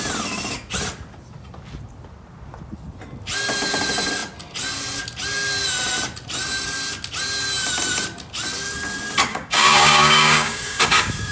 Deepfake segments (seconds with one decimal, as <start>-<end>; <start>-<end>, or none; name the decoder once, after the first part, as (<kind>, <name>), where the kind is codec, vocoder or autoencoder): 9.3-11.3 (codec, DAC)